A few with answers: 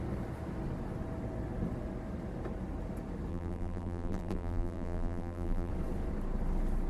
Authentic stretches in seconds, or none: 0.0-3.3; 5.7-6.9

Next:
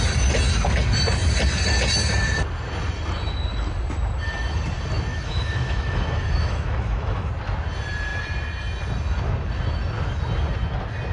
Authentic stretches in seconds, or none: 0.0-5.1; 7.3-11.1